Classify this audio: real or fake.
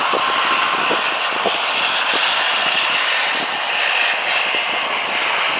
real